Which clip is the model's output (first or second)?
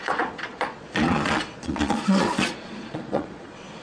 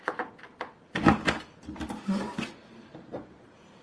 first